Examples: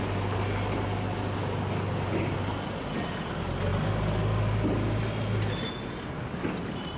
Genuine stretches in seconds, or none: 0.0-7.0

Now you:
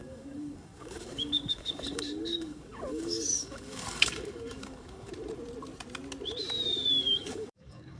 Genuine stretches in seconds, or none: 5.1-6.9

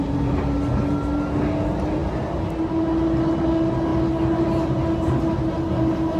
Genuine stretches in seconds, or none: 0.0-6.2

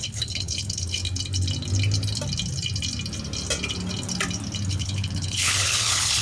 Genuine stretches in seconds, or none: 1.0-4.7

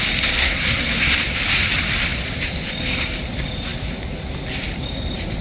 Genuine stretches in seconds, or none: 0.0-0.4; 1.1-5.4

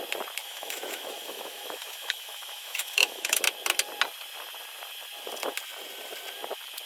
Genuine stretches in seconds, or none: 0.0-0.4; 3.4-6.9